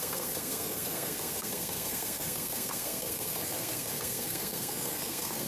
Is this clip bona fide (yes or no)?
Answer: no